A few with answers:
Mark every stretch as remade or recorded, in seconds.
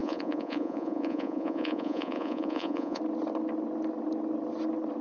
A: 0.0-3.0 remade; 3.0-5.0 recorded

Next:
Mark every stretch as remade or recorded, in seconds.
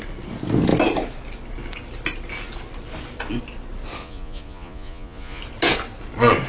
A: 0.0-4.0 recorded; 4.0-5.4 remade; 5.4-6.5 recorded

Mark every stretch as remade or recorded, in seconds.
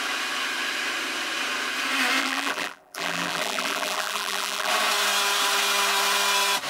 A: 0.0-2.2 recorded; 2.2-4.7 remade; 4.7-6.7 recorded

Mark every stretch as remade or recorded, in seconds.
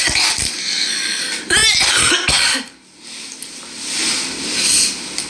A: 0.0-0.6 recorded; 0.6-1.2 remade; 1.2-5.3 recorded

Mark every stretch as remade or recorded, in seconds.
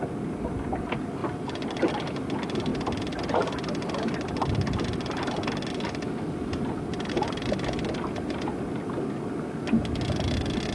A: 0.0-10.7 recorded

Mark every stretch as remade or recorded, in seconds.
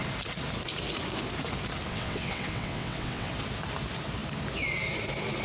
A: 0.0-1.9 recorded; 1.9-3.3 remade; 3.3-5.4 recorded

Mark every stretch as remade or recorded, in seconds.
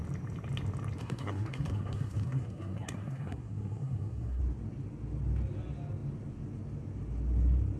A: 0.0-1.0 recorded; 1.0-4.4 remade; 4.4-7.8 recorded